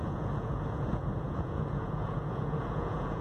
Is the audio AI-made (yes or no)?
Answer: yes